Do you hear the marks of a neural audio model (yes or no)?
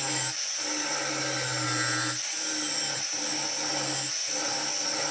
no